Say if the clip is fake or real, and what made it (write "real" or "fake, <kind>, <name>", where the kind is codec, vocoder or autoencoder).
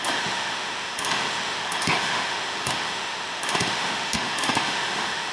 fake, autoencoder, DAC-VAE